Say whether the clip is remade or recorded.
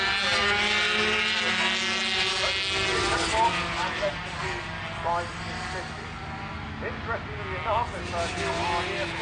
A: recorded